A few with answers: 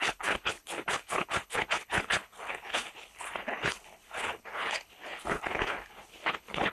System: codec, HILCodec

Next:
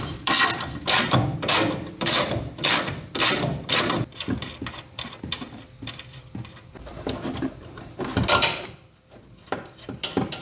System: vocoder, BigVGAN v2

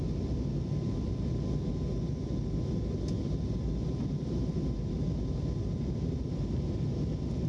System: none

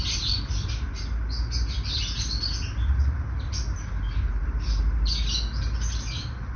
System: none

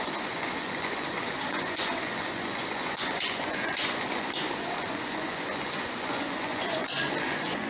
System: vocoder, Vocos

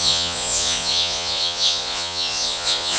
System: vocoder, Vocos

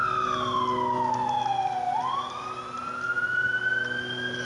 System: none